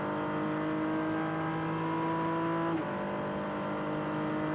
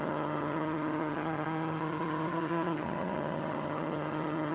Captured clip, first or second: first